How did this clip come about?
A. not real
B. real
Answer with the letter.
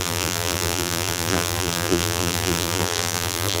A